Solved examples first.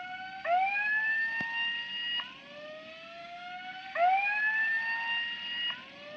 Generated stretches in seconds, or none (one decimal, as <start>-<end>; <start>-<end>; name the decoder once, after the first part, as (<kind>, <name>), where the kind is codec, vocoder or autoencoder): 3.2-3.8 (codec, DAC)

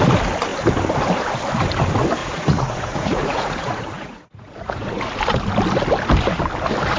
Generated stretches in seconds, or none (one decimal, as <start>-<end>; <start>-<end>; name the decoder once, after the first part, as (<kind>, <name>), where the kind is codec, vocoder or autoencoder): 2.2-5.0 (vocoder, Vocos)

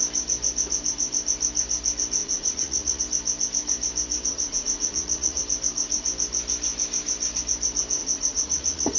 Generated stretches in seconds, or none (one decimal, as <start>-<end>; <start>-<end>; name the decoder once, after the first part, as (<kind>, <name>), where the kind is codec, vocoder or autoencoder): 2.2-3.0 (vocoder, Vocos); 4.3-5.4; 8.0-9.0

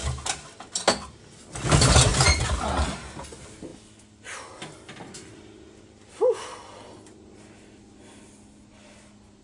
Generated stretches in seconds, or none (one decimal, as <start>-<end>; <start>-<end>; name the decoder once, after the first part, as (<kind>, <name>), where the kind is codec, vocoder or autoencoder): 2.1-2.6 (vocoder, BigVGAN v2)

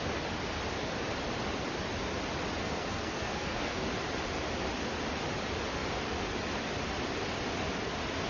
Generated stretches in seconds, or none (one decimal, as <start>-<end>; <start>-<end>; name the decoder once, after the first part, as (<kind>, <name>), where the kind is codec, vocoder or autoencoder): 2.6-3.8 (codec, SNAC)

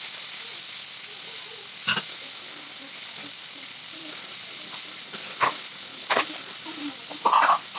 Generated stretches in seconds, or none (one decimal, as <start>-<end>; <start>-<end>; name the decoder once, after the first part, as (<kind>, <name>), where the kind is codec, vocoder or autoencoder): 3.2-5.1 (vocoder, BigVGAN v2); 5.9-6.9